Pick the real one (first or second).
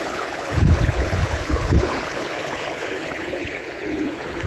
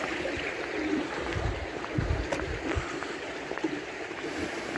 second